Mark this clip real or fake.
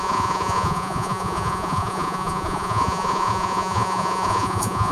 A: fake